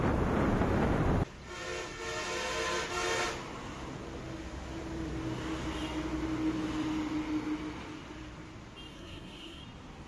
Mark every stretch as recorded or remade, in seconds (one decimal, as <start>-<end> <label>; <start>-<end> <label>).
0.0-8.9 recorded; 8.9-9.6 remade; 9.6-10.1 recorded